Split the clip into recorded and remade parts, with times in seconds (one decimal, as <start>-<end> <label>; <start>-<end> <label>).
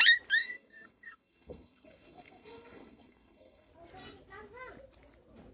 0.0-0.4 recorded; 0.4-3.7 remade; 3.7-5.5 recorded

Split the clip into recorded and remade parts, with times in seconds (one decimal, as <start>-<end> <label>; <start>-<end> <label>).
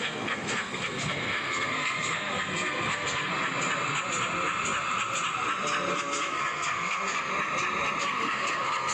0.0-3.3 remade; 3.3-5.9 recorded; 5.9-7.3 remade; 7.3-8.0 recorded; 8.0-8.9 remade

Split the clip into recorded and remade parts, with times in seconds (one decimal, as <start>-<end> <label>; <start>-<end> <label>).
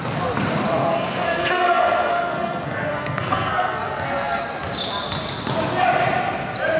0.0-0.9 recorded; 0.9-4.4 remade; 4.4-6.8 recorded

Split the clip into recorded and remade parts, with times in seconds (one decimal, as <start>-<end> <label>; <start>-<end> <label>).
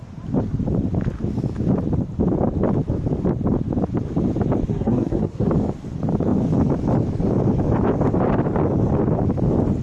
0.0-4.7 recorded; 4.7-5.5 remade; 5.5-9.8 recorded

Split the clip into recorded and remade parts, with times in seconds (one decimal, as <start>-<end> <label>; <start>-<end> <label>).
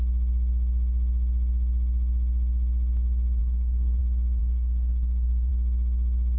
0.0-3.4 recorded; 3.4-4.0 remade; 4.0-4.4 recorded; 4.4-5.5 remade; 5.5-6.4 recorded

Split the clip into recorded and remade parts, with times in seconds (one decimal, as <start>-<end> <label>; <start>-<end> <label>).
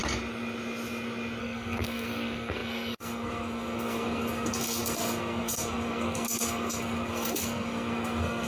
0.0-1.4 recorded; 1.4-8.5 remade